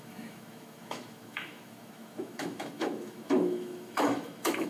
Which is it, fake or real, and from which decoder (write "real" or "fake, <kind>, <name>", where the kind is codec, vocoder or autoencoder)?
fake, autoencoder, DAC-VAE